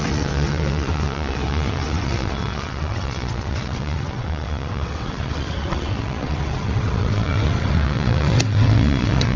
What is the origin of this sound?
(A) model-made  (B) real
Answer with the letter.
A